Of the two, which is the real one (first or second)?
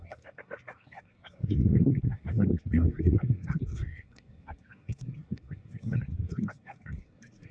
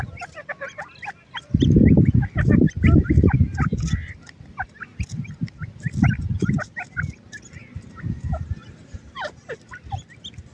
second